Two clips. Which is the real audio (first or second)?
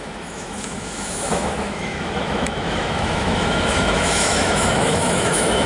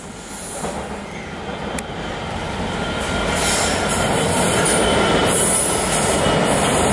second